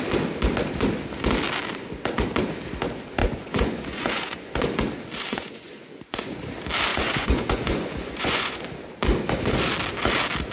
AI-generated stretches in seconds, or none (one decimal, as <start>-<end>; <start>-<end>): 3.2-4.5; 5.3-6.4; 6.9-8.6